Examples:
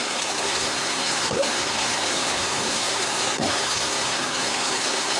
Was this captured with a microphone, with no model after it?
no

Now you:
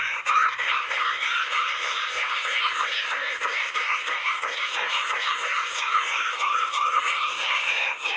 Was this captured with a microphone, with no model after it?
no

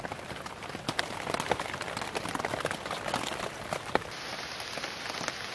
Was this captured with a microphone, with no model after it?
yes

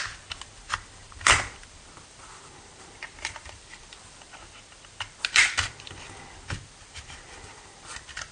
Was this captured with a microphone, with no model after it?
no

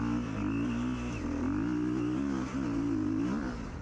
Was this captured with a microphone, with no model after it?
yes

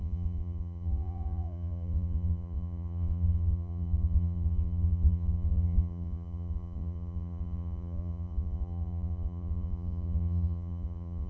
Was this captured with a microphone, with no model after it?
no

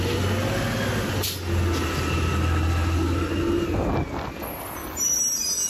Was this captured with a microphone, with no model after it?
yes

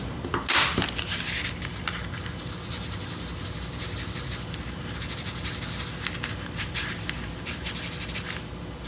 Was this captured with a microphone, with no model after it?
yes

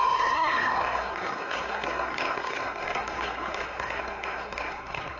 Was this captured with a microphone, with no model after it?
no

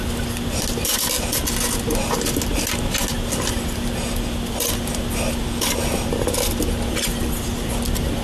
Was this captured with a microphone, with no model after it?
yes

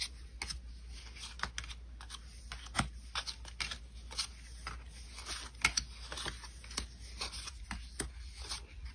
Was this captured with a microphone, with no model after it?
yes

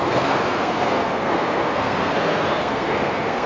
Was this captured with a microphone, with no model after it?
no